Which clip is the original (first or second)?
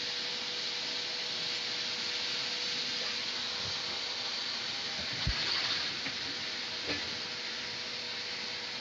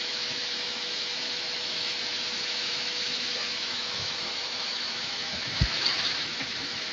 first